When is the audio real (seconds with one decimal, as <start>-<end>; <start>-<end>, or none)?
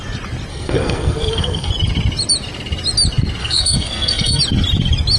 0.0-0.5; 1.7-3.4; 4.4-5.2